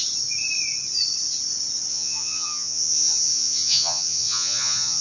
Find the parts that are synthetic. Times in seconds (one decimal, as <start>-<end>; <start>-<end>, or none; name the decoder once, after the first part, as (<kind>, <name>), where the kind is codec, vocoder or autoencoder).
1.9-5.0 (vocoder, Vocos)

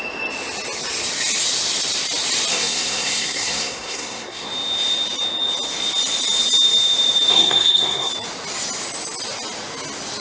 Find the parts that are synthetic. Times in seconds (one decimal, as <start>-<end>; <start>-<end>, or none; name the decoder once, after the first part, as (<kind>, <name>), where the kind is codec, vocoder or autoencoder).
2.5-4.5 (codec, SNAC); 7.3-8.1

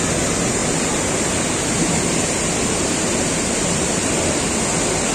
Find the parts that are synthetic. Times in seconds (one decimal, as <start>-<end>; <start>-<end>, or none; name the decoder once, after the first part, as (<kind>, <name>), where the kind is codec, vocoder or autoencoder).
none

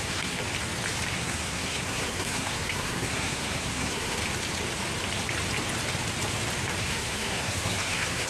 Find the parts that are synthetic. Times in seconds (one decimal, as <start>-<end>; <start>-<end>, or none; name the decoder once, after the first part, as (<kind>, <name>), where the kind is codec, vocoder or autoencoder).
0.0-0.4 (codec, SNAC); 1.1-4.2; 6.8-8.3